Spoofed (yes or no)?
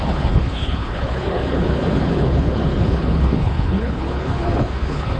yes